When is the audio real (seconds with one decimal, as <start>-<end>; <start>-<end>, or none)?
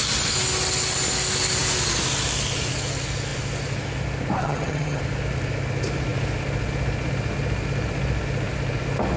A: 0.0-4.4; 5.0-9.2